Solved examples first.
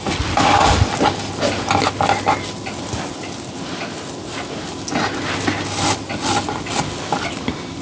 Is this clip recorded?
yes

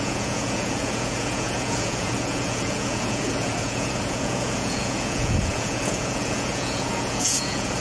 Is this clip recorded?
no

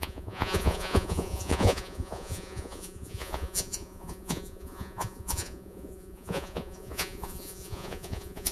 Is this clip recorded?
no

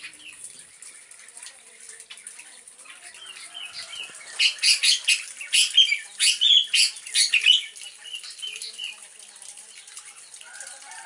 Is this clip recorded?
yes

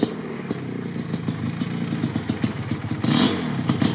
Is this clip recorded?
yes